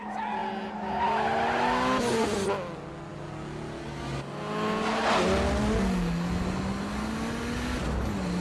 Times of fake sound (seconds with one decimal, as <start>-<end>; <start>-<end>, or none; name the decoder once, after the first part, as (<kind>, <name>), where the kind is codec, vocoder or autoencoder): none